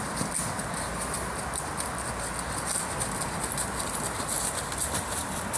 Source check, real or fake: real